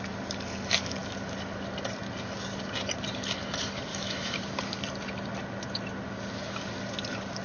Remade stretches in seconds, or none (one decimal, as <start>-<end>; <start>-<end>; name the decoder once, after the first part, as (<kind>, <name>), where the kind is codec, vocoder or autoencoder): 3.9-4.4 (autoencoder, DAC-VAE)